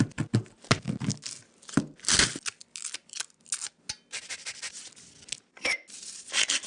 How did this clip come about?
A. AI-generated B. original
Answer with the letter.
B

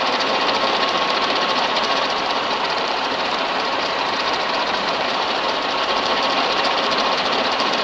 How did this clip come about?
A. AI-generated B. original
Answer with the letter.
A